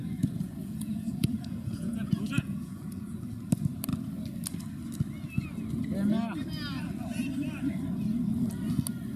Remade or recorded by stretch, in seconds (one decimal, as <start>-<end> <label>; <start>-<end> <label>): 0.0-3.2 remade; 3.2-9.2 recorded